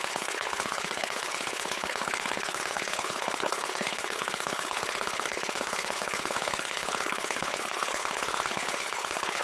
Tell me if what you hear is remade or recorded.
remade